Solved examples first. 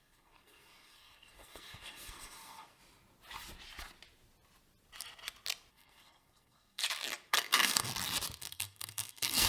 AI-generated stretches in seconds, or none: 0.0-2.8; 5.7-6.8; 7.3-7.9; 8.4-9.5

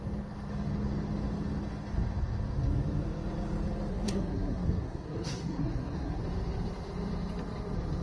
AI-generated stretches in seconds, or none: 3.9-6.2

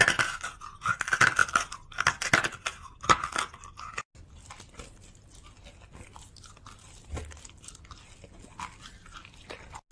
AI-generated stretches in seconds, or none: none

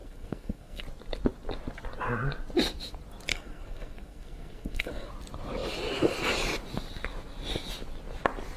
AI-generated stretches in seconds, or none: 0.0-0.8; 3.3-5.1

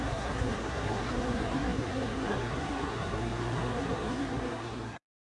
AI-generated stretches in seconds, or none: 0.0-5.2